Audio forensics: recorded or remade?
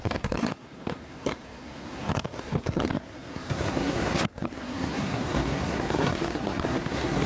remade